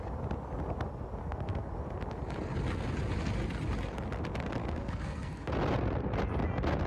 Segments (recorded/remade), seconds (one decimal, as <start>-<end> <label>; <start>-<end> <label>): 0.0-1.2 recorded; 1.2-1.7 remade; 1.7-4.6 recorded; 4.6-5.5 remade; 5.5-6.9 recorded